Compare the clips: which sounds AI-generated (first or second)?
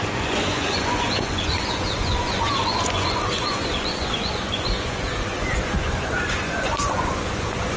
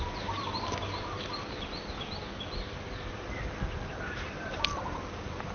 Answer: first